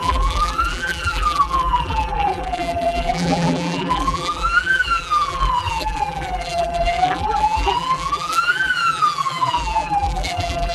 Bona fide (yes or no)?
no